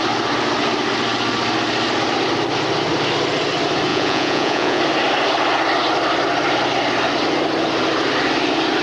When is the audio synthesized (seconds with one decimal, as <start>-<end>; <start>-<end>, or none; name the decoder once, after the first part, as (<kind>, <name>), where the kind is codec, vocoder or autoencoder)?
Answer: 3.9-4.8 (vocoder, Vocos)